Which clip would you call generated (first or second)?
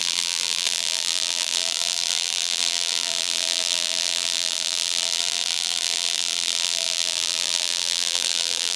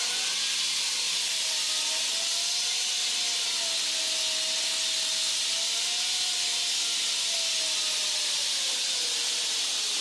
first